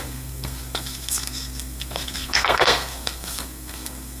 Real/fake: fake